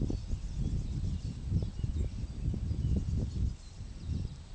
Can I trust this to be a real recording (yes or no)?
yes